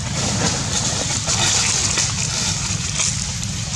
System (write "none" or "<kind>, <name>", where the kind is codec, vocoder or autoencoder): none